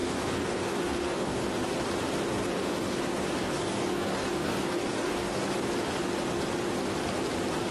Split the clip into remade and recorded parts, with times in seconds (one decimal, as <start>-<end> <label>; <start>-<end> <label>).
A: 0.0-1.5 remade; 1.5-2.3 recorded; 2.3-3.0 remade; 3.0-3.4 recorded; 3.4-5.5 remade; 5.5-7.7 recorded